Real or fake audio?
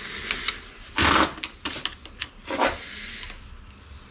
real